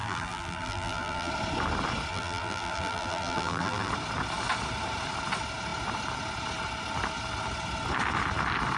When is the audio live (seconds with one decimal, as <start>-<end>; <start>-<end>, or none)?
1.3-2.1; 3.9-8.8